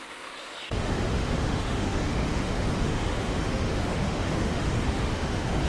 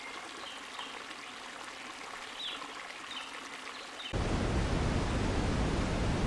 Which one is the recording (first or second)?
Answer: second